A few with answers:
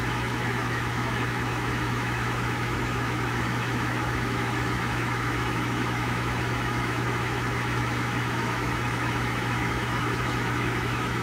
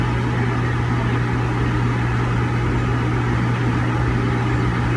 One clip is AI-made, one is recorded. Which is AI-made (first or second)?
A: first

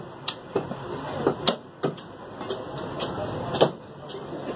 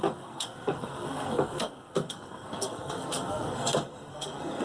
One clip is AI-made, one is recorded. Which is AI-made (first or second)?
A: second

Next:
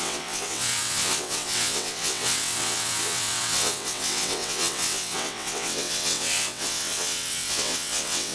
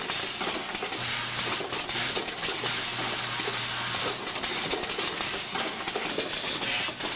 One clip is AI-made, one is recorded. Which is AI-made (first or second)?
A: first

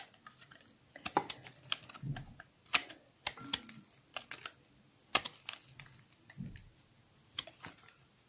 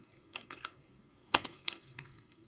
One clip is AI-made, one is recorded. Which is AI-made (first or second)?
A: second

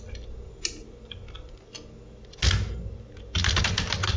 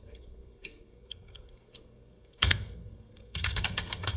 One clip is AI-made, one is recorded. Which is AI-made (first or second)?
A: second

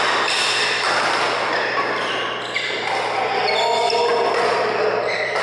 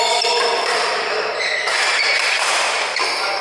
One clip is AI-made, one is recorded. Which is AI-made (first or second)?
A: second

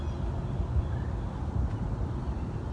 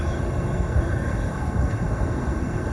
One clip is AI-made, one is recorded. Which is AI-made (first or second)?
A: second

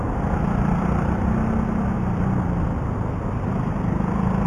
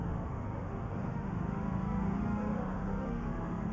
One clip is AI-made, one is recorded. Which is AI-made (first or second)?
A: second